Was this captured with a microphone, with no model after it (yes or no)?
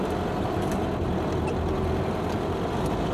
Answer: yes